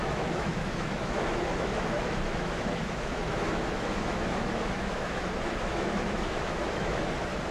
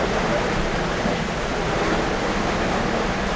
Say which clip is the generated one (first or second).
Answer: first